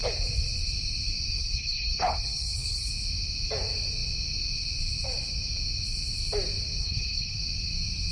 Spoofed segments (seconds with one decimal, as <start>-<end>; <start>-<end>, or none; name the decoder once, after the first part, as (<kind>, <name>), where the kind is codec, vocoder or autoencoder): 1.4-2.9 (codec, HILCodec); 6.8-7.4